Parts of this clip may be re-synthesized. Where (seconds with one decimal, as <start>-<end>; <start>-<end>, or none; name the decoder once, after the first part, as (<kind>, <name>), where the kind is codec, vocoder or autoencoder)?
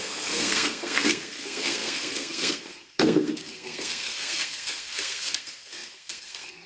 0.0-6.7 (codec, SNAC)